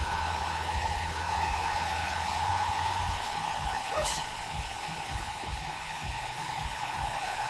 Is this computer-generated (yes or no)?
yes